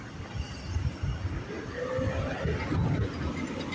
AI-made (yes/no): no